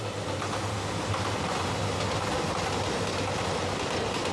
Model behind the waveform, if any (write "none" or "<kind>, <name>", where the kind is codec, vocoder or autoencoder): none